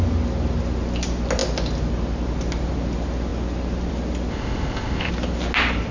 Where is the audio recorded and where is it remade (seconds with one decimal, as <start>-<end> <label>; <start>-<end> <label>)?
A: 0.0-4.3 recorded; 4.3-5.1 remade; 5.1-5.9 recorded